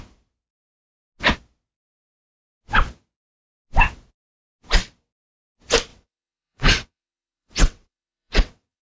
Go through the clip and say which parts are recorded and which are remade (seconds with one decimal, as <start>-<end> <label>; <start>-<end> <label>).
0.0-5.9 recorded; 5.9-8.8 remade